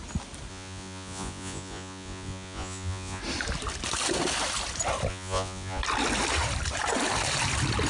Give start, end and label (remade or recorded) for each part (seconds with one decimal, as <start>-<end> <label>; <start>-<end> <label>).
0.0-0.5 recorded; 0.5-3.2 remade; 3.2-5.1 recorded; 5.1-5.8 remade; 5.8-7.9 recorded